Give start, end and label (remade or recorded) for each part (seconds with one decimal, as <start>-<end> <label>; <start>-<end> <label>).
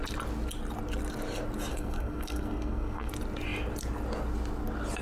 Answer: 0.0-1.7 recorded; 1.7-3.1 remade; 3.1-5.0 recorded